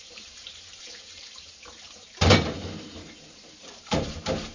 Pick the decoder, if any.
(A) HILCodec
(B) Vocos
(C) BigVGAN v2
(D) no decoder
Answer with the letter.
C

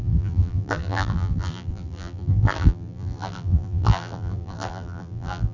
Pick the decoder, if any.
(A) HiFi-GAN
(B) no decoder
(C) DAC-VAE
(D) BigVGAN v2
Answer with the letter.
D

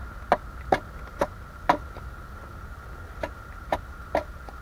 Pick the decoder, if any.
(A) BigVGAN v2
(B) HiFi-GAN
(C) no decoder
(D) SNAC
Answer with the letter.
C